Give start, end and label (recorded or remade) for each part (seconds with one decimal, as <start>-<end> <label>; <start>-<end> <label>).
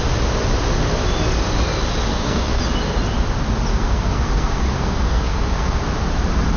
0.0-2.1 recorded; 2.1-2.6 remade; 2.6-3.7 recorded; 3.7-5.8 remade; 5.8-6.6 recorded